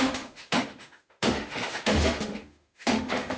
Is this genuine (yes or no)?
no